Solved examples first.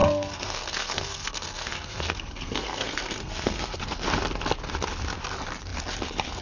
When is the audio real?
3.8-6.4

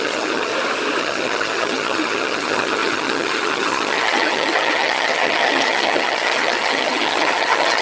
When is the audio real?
0.5-1.0

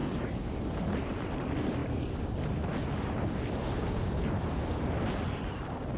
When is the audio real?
0.0-6.0

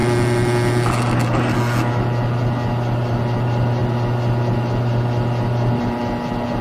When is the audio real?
0.0-6.6